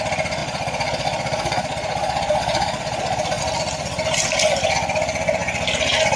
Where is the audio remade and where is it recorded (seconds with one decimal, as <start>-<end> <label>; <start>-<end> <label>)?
0.0-0.4 recorded; 0.4-3.4 remade; 3.4-6.2 recorded

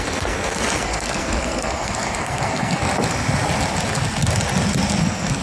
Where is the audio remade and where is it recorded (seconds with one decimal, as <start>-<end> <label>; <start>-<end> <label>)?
0.0-2.9 remade; 2.9-5.0 recorded; 5.0-5.4 remade

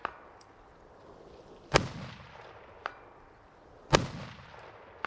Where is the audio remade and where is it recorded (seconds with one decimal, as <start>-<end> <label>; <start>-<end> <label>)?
0.0-5.1 recorded

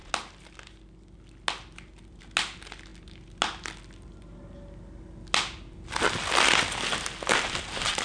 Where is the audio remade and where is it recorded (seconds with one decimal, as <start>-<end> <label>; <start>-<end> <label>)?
0.0-8.0 recorded

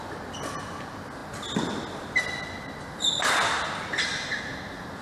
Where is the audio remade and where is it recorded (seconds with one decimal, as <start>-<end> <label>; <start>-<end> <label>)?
0.0-5.0 recorded